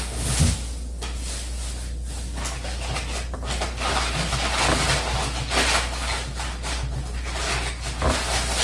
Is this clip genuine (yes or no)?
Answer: yes